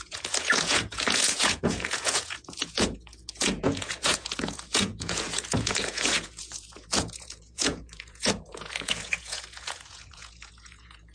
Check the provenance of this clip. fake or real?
fake